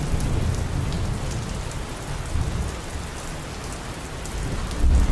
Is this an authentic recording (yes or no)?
yes